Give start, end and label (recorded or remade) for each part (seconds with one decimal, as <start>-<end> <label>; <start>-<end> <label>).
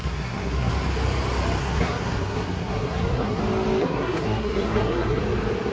0.0-0.7 remade; 0.7-1.6 recorded; 1.6-3.4 remade; 3.4-3.8 recorded; 3.8-5.2 remade; 5.2-5.7 recorded